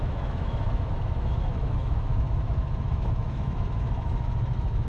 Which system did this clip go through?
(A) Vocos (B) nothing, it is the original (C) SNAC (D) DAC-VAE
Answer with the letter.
D